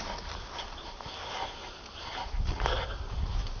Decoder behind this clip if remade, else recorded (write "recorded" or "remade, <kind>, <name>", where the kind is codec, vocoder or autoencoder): recorded